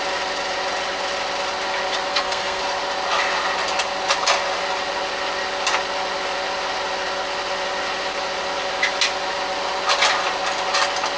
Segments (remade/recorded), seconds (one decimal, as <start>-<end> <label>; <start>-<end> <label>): 0.0-2.1 recorded; 2.1-2.6 remade; 2.6-11.2 recorded